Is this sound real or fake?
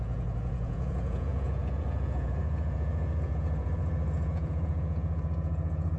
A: fake